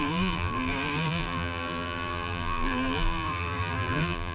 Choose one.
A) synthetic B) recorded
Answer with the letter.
A